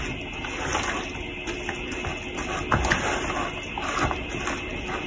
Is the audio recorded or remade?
recorded